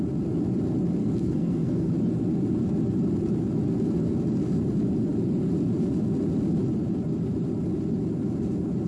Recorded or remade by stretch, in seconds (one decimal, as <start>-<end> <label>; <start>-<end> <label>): 0.0-1.0 recorded; 1.0-1.9 remade; 1.9-8.9 recorded